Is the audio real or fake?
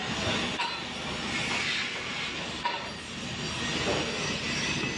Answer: real